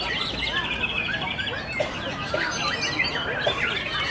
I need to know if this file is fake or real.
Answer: real